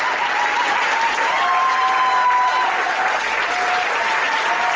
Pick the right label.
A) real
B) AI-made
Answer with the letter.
A